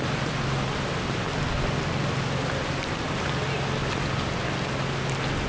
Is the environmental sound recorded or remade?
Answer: recorded